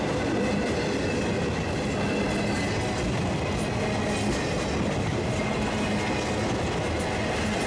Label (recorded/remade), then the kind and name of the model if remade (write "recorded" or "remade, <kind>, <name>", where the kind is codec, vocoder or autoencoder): recorded